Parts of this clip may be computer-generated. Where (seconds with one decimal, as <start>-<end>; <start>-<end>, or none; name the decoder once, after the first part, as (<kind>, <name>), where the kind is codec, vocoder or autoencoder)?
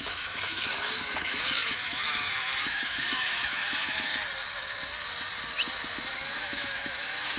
0.0-4.1 (autoencoder, DAC-VAE); 6.1-7.4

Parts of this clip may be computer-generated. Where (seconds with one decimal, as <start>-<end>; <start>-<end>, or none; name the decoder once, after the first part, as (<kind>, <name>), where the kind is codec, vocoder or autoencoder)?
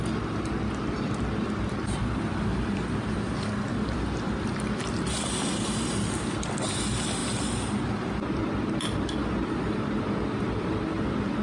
0.0-7.2 (vocoder, BigVGAN v2); 8.3-9.2; 10.4-11.4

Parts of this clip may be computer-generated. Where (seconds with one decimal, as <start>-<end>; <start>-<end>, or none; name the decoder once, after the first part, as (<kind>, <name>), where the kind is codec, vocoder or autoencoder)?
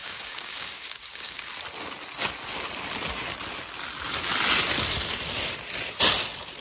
0.0-1.5 (codec, DAC)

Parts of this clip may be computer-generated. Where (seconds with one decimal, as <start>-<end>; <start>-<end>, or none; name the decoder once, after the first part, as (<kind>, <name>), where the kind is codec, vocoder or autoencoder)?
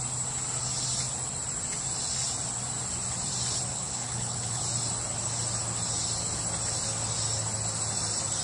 3.7-4.6 (codec, HILCodec)